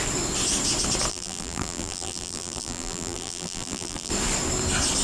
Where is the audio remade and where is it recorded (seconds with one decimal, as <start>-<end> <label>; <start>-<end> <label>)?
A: 0.0-1.1 recorded; 1.1-4.1 remade; 4.1-5.0 recorded